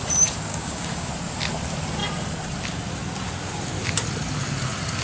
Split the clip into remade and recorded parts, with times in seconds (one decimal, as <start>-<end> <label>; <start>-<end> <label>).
0.0-0.5 recorded; 0.5-1.1 remade; 1.1-5.0 recorded